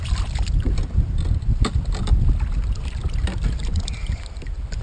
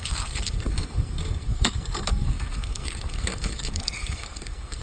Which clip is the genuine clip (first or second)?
first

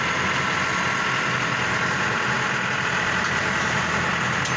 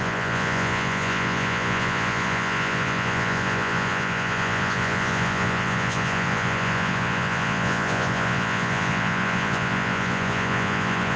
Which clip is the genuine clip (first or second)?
first